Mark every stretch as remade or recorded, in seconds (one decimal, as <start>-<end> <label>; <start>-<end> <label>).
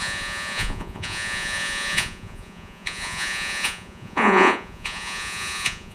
0.0-5.9 remade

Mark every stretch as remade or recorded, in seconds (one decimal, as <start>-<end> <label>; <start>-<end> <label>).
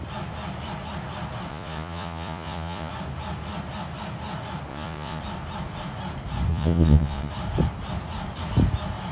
0.0-1.5 recorded; 1.5-2.9 remade; 2.9-4.7 recorded; 4.7-5.2 remade; 5.2-6.5 recorded; 6.5-7.3 remade; 7.3-9.1 recorded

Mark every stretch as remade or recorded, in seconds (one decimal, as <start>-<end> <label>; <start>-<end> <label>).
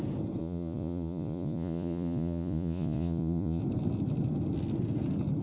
0.0-0.4 recorded; 0.4-3.6 remade; 3.6-5.4 recorded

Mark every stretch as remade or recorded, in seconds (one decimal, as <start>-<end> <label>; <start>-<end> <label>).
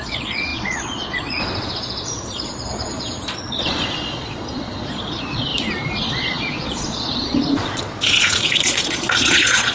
0.0-5.5 remade; 5.5-6.1 recorded; 6.1-9.7 remade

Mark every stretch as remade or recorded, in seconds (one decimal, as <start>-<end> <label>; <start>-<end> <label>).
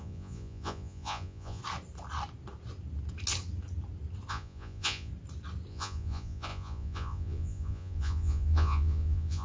0.0-1.6 remade; 1.6-4.3 recorded; 4.3-5.1 remade; 5.1-5.7 recorded; 5.7-9.4 remade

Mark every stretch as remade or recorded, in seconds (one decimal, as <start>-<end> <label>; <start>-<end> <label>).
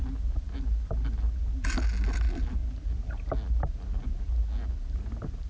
0.0-5.5 recorded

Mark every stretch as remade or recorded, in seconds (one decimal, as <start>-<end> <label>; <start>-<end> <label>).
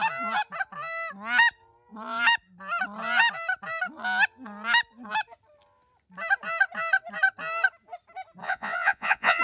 0.0-8.4 recorded; 8.4-9.4 remade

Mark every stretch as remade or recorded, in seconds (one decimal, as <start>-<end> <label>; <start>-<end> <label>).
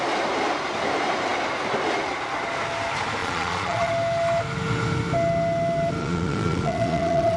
0.0-3.2 recorded; 3.2-3.9 remade; 3.9-6.0 recorded; 6.0-7.4 remade